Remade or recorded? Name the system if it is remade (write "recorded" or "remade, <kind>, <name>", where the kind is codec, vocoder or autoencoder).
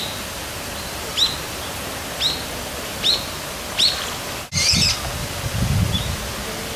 recorded